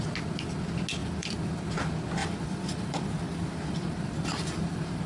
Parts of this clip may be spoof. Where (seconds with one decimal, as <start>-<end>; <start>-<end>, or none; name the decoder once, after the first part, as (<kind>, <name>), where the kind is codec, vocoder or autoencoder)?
1.0-1.6 (vocoder, BigVGAN v2); 2.2-5.1